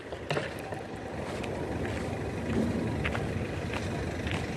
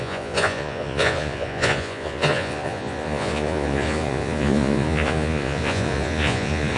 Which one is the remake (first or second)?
second